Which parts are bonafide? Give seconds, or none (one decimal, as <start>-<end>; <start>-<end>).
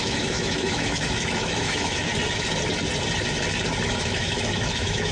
2.1-3.9